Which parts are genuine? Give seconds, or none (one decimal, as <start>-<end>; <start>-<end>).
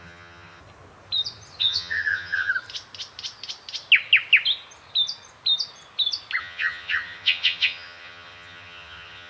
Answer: 0.6-1.6; 2.5-6.4